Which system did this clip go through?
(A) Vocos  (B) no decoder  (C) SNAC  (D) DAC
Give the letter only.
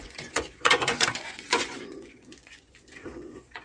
A